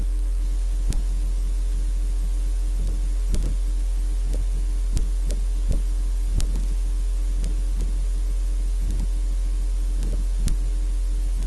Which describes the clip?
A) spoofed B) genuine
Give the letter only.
B